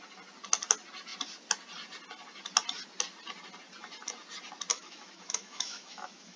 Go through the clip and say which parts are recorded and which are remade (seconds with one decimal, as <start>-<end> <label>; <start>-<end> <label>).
0.0-4.7 recorded; 4.7-6.4 remade